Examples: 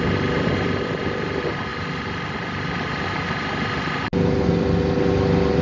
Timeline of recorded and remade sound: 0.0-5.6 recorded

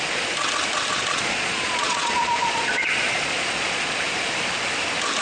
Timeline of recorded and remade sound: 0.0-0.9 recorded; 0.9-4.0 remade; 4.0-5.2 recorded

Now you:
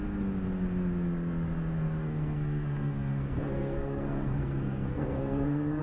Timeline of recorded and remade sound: 0.0-2.0 recorded; 2.0-5.8 remade

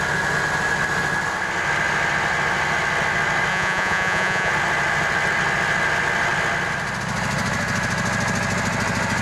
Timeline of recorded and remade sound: 0.0-3.5 recorded; 3.5-4.5 remade; 4.5-9.2 recorded

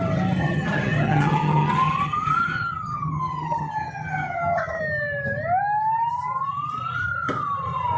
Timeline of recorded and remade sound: 0.0-0.4 recorded; 0.4-4.8 remade; 4.8-8.0 recorded

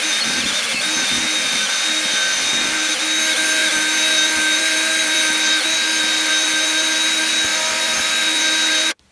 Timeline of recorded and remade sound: 0.0-7.5 recorded; 7.5-8.0 remade; 8.0-9.1 recorded

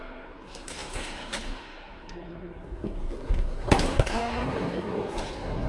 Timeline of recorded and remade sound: 0.0-5.7 remade